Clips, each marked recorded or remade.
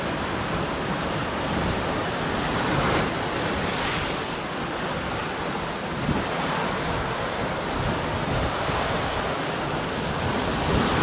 recorded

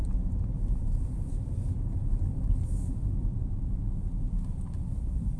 remade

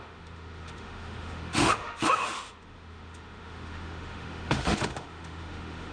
remade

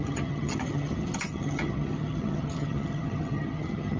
remade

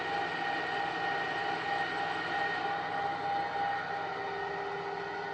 recorded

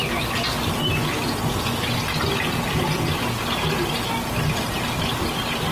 recorded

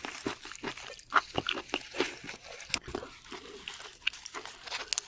recorded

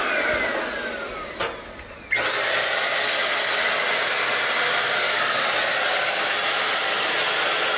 recorded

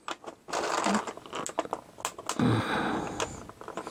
recorded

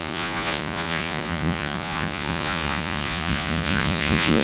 remade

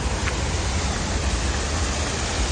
recorded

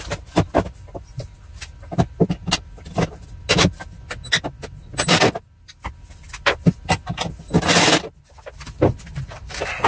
recorded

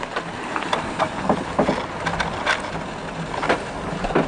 recorded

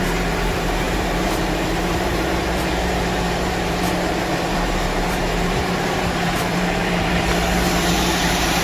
remade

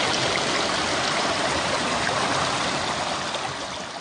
recorded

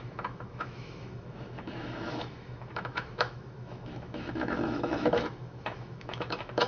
remade